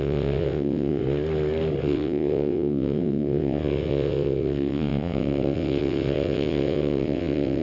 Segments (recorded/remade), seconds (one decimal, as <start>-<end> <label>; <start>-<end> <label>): 0.0-1.0 remade; 1.0-1.8 recorded; 1.8-7.6 remade